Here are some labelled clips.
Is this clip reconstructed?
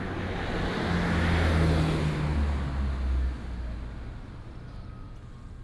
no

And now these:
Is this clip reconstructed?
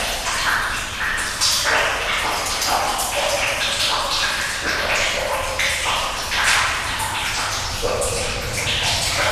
no